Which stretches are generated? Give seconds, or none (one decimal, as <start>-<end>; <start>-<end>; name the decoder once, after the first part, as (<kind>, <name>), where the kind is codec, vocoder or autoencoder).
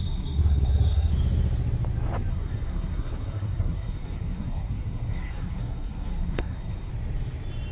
0.0-1.1 (codec, SNAC); 2.3-6.9